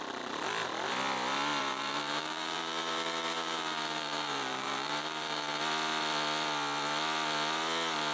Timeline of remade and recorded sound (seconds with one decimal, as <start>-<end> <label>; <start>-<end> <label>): 0.0-1.6 recorded; 1.6-5.6 remade; 5.6-8.1 recorded